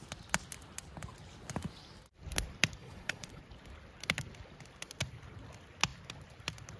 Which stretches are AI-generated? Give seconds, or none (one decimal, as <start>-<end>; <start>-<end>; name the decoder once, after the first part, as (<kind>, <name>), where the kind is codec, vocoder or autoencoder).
2.8-3.4 (vocoder, Vocos)